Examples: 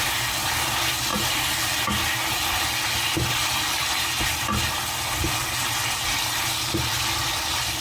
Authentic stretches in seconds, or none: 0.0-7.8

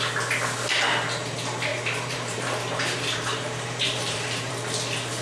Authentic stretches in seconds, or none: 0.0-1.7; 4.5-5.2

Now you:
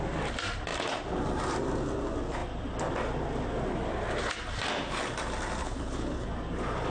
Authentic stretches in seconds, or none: 0.0-5.6; 6.3-6.9